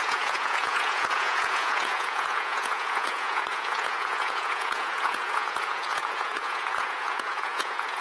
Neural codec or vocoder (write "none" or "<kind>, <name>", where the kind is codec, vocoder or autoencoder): vocoder, Vocos